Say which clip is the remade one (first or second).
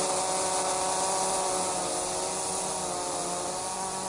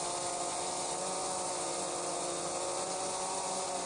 second